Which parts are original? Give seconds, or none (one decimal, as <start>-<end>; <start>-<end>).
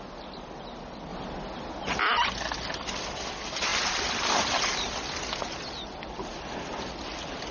0.0-7.5